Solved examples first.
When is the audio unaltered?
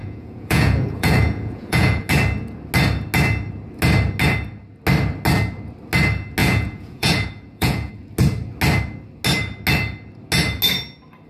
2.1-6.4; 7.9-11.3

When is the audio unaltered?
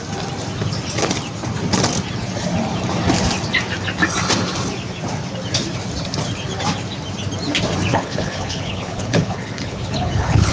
0.0-7.9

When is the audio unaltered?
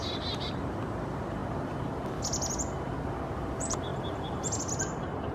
1.4-3.4; 3.9-5.3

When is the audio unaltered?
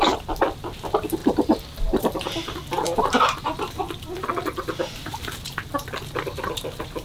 0.0-1.2; 4.1-7.0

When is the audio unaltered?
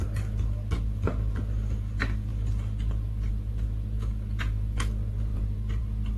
0.0-5.3; 5.8-6.2